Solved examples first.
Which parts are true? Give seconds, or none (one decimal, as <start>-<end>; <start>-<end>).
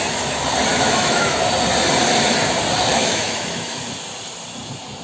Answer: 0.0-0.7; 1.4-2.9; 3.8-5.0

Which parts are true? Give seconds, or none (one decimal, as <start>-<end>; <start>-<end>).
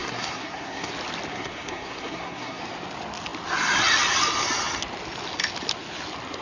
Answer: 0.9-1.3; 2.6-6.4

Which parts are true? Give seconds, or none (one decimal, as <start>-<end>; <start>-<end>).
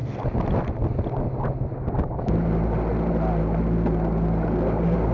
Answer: 0.0-5.1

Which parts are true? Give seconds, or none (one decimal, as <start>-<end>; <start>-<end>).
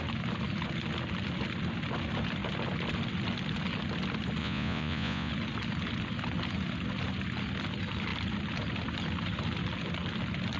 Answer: 0.0-4.4; 5.3-10.6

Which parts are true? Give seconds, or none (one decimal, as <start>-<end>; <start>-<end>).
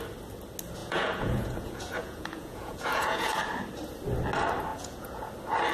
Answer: 0.0-0.8; 3.4-4.7; 5.3-5.7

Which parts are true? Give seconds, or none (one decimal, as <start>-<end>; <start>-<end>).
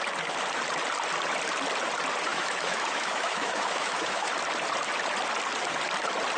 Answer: 0.0-2.3; 4.3-6.4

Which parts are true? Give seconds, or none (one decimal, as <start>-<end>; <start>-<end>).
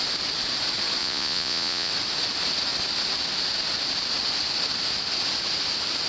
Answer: 0.0-1.0; 1.9-6.1